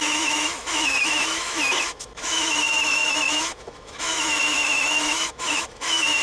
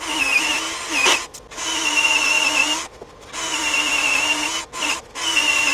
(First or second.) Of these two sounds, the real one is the second